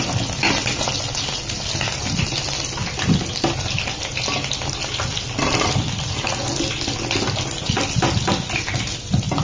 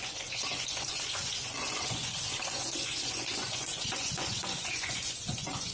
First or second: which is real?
first